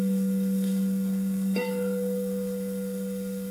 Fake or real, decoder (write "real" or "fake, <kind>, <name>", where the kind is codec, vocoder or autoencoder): fake, codec, SNAC